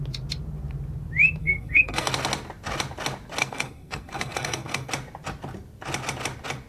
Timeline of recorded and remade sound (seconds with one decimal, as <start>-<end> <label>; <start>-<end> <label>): 0.0-1.4 recorded; 1.4-2.1 remade; 2.1-3.4 recorded; 3.4-4.9 remade; 4.9-6.7 recorded

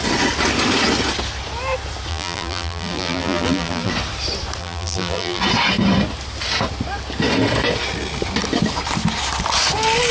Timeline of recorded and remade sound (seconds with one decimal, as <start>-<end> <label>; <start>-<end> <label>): 0.0-2.1 recorded; 2.1-3.9 remade; 3.9-4.6 recorded; 4.6-5.4 remade; 5.4-10.1 recorded

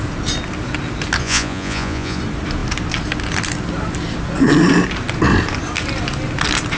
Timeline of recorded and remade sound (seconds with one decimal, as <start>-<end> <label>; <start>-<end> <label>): 0.0-1.2 recorded; 1.2-2.2 remade; 2.2-6.8 recorded

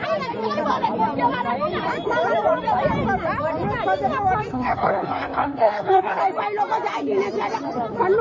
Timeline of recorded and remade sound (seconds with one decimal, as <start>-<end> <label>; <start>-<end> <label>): 0.0-4.5 recorded; 4.5-6.2 remade; 6.2-8.2 recorded

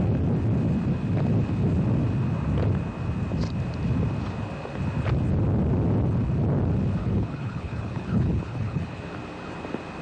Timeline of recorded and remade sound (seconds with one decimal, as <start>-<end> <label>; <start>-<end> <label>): 0.0-7.0 recorded; 7.0-9.0 remade; 9.0-10.0 recorded

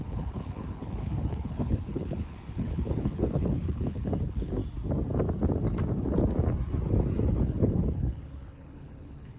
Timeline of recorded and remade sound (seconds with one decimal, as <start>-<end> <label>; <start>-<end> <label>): 0.0-4.6 remade; 4.6-7.3 recorded; 7.3-9.4 remade

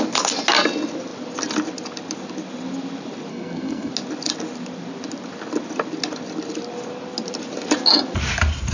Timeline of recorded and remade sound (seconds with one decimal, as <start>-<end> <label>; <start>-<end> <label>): 0.0-3.3 recorded; 3.3-3.9 remade; 3.9-8.7 recorded